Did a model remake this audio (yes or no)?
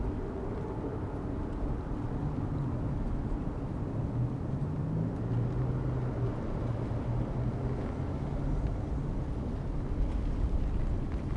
no